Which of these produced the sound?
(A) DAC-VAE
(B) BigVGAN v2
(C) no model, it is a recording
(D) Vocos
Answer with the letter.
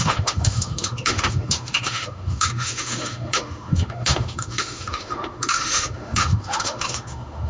A